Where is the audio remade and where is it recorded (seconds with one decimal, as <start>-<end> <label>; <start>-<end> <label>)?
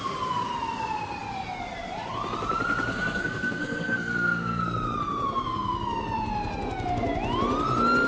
0.0-2.9 recorded; 2.9-4.6 remade; 4.6-8.1 recorded